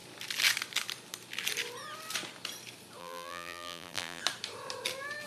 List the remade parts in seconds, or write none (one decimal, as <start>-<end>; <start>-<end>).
3.0-4.2